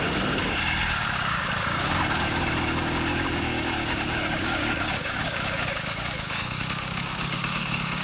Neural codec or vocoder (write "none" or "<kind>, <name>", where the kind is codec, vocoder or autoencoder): codec, DAC